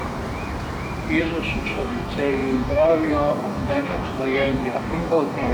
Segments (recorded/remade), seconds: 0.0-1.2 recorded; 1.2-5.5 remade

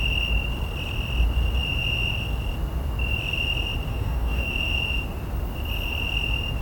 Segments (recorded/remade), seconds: 0.0-3.9 recorded; 3.9-4.5 remade; 4.5-6.6 recorded

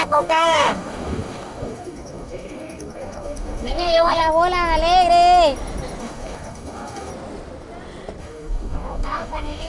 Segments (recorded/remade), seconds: 0.0-4.2 remade; 4.2-6.0 recorded; 6.0-7.1 remade; 7.1-8.2 recorded; 8.2-9.7 remade

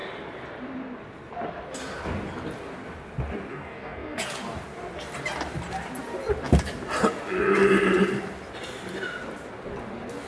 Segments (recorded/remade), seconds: 0.0-3.5 recorded; 3.5-4.2 remade; 4.2-10.3 recorded

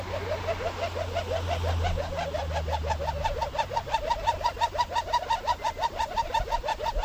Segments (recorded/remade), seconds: 0.0-7.0 recorded

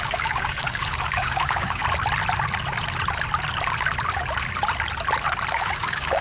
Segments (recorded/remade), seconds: 0.0-1.8 remade; 1.8-5.5 recorded; 5.5-6.2 remade

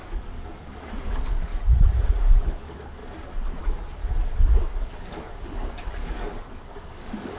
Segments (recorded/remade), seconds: 0.0-1.5 remade; 1.5-2.2 recorded; 2.2-3.0 remade; 3.0-3.6 recorded; 3.6-4.0 remade; 4.0-4.6 recorded; 4.6-7.4 remade

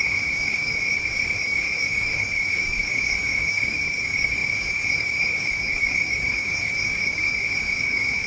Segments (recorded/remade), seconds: 0.0-8.3 remade